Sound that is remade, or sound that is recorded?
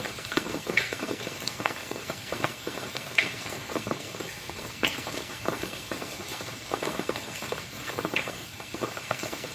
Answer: remade